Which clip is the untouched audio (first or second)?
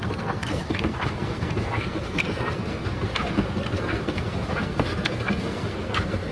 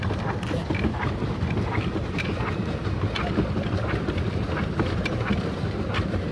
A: second